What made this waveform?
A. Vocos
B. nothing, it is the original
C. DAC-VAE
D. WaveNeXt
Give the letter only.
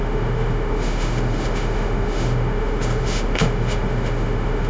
C